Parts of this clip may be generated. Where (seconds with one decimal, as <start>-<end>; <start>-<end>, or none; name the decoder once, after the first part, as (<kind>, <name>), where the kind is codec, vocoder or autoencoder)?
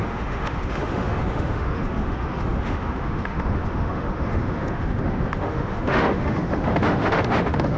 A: 0.0-7.8 (autoencoder, DAC-VAE)